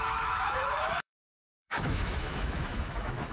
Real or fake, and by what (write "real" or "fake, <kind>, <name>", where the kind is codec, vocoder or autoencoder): fake, autoencoder, DAC-VAE